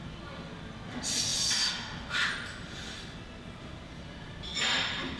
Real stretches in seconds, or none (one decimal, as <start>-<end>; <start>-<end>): 0.0-5.2